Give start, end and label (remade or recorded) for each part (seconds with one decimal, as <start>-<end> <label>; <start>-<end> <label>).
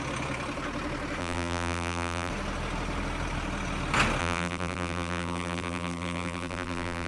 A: 0.0-1.2 recorded; 1.2-2.3 remade; 2.3-4.2 recorded; 4.2-7.1 remade